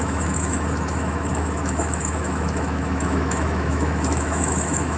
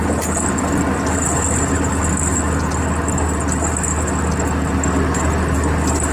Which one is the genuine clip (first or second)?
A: second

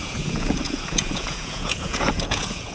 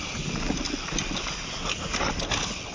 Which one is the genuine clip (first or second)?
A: second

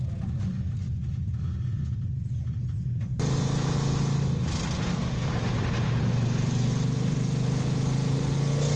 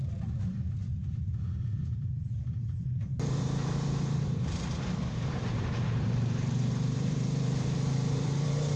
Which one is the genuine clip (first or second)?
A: first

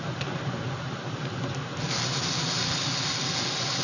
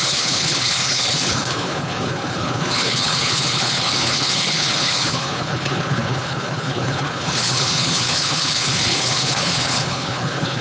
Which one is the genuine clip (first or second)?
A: first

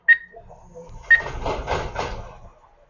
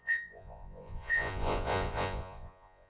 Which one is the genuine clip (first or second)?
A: first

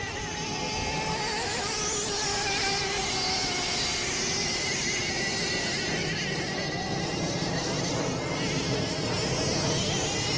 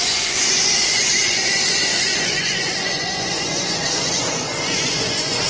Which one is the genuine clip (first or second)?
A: first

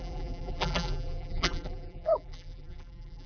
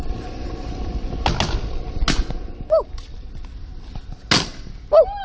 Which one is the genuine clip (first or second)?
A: second